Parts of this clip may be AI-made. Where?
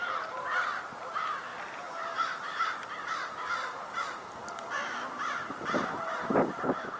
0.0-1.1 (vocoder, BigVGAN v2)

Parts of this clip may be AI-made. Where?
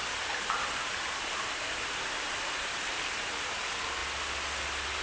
0.0-3.0 (vocoder, BigVGAN v2)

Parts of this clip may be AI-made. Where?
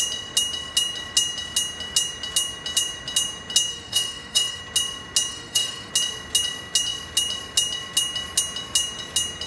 3.7-4.6 (autoencoder, DAC-VAE); 5.3-5.9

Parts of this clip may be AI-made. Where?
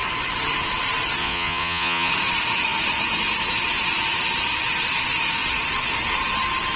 1.2-2.1 (vocoder, Vocos)